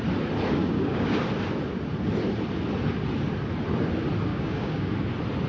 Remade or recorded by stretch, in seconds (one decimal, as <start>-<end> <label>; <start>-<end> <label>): 0.0-0.6 recorded; 0.6-1.2 remade; 1.2-4.3 recorded; 4.3-4.9 remade; 4.9-5.5 recorded